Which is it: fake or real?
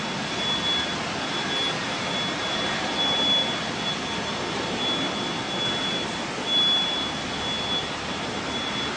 real